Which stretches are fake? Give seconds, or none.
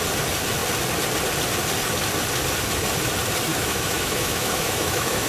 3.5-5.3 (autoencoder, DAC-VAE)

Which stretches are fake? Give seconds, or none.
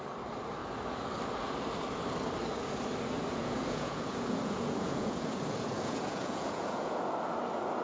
3.3-7.1 (vocoder, Vocos)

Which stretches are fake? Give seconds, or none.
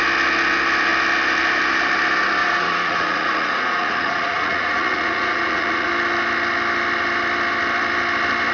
2.4-5.9 (vocoder, Vocos)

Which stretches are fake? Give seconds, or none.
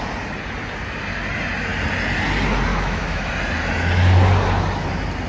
2.7-3.3 (autoencoder, DAC-VAE)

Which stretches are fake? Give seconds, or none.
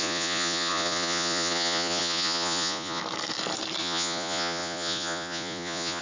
0.0-3.0 (vocoder, Vocos); 3.8-6.0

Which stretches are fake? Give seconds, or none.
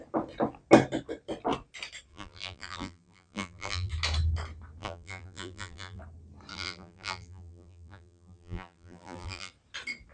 2.1-3.9 (vocoder, BigVGAN v2); 4.8-6.0; 6.5-9.5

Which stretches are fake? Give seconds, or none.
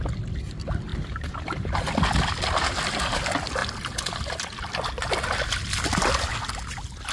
0.9-1.9 (vocoder, BigVGAN v2)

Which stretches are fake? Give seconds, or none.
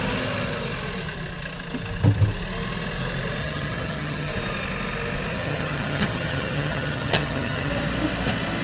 3.4-4.3 (vocoder, HiFi-GAN); 5.3-7.7